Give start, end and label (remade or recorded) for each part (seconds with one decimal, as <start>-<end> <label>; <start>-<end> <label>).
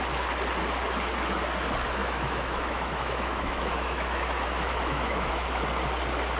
0.0-2.0 recorded; 2.0-5.6 remade; 5.6-6.4 recorded